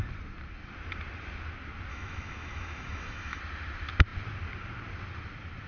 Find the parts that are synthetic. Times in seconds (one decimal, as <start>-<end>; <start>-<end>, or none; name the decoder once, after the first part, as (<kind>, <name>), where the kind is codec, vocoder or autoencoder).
1.9-3.4 (autoencoder, DAC-VAE)